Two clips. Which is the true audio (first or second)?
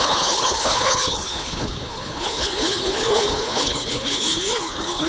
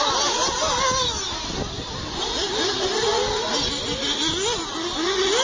second